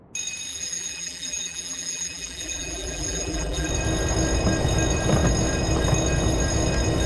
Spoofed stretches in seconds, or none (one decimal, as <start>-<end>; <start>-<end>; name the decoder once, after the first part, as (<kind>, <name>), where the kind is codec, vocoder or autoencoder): 0.5-3.7 (vocoder, BigVGAN v2)